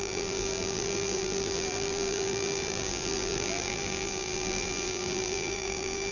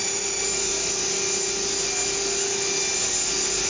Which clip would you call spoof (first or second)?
first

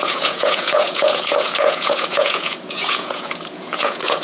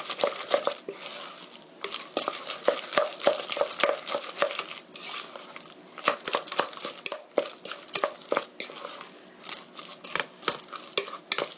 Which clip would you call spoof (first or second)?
first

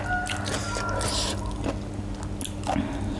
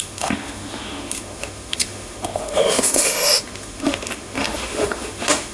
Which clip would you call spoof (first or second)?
second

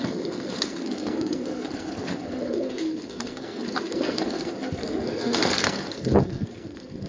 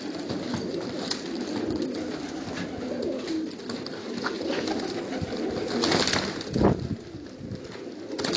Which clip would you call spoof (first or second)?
first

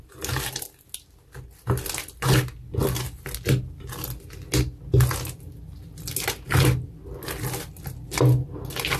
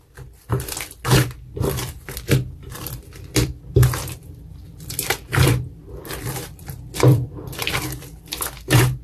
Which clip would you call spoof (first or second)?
second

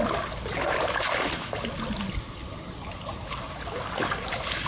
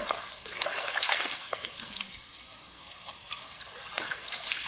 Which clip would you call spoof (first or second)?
second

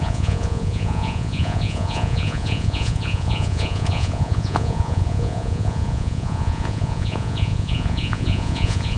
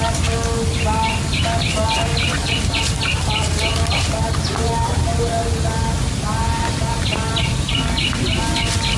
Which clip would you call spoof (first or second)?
first